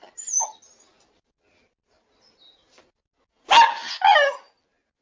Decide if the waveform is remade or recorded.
recorded